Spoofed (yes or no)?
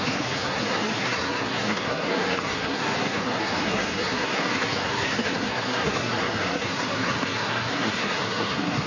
yes